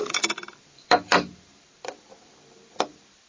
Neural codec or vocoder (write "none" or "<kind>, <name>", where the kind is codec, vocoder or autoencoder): vocoder, BigVGAN v2